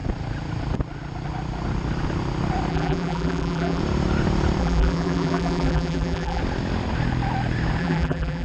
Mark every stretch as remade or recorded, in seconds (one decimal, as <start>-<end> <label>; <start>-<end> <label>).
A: 0.0-2.7 recorded; 2.7-3.8 remade; 3.8-4.6 recorded; 4.6-6.4 remade; 6.4-7.8 recorded; 7.8-8.4 remade